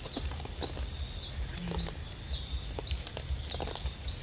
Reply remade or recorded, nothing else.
recorded